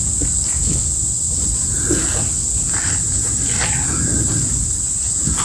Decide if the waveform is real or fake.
real